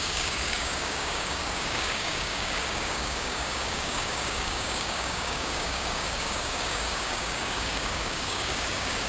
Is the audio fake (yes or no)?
yes